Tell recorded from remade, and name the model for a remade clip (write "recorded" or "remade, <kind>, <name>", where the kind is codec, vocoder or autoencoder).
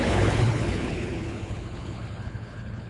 remade, codec, HILCodec